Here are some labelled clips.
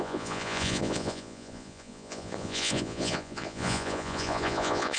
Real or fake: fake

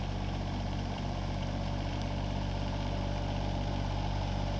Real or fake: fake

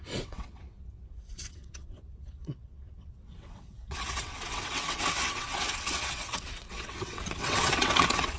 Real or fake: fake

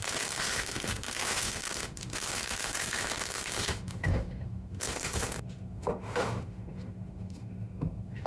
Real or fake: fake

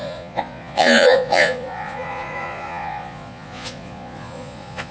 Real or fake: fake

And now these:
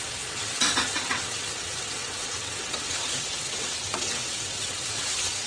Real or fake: fake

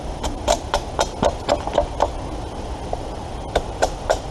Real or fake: real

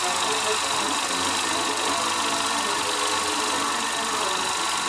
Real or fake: real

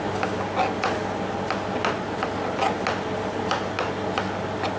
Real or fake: real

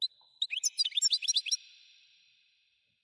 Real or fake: real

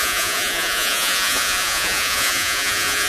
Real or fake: fake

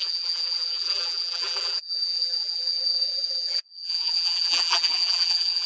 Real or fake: fake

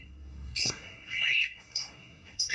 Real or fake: fake